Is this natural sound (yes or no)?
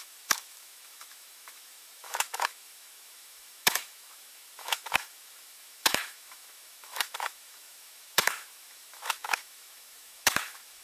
no